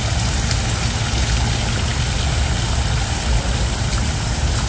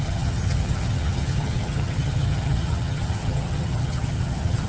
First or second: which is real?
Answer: first